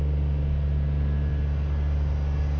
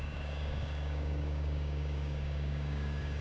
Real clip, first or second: first